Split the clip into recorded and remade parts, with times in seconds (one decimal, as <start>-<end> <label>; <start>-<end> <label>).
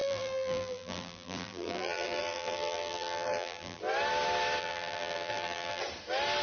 0.0-3.8 remade; 3.8-4.6 recorded; 4.6-5.8 remade; 5.8-6.4 recorded